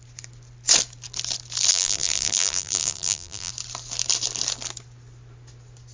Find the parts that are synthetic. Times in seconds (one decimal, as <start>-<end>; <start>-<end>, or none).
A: 1.7-3.5